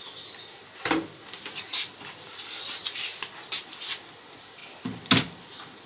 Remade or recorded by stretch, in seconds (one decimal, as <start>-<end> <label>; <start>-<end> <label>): 0.0-5.9 recorded